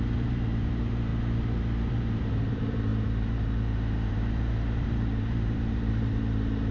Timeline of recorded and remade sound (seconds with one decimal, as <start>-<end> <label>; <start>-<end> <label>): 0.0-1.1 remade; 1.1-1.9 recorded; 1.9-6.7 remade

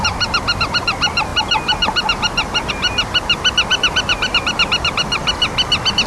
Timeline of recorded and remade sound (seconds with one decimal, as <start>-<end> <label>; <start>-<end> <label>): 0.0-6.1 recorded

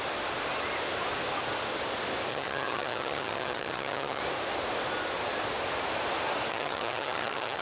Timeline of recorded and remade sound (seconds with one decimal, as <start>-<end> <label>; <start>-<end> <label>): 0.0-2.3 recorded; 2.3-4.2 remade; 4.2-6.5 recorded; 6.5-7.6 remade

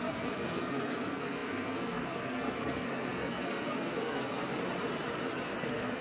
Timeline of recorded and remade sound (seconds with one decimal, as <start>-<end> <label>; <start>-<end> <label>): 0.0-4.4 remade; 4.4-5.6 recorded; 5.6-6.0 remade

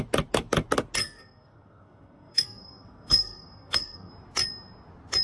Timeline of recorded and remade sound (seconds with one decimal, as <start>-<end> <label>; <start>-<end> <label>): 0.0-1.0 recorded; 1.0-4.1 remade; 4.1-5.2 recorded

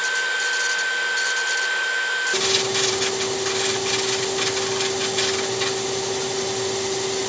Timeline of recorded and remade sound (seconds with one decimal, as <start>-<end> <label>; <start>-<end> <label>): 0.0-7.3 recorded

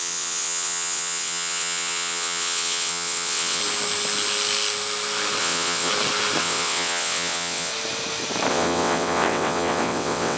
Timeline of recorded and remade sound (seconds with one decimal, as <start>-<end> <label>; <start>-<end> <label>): 0.0-3.6 remade; 3.6-5.4 recorded; 5.4-5.9 remade; 5.9-6.4 recorded; 6.4-7.7 remade; 7.7-8.5 recorded; 8.5-10.4 remade

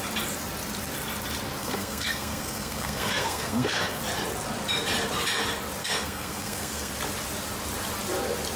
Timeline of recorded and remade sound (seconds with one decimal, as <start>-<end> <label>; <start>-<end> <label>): 0.0-1.6 recorded; 1.6-4.0 remade; 4.0-5.8 recorded; 5.8-6.9 remade; 6.9-8.6 recorded